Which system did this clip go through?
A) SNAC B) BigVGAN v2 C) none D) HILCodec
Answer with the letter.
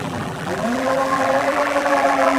B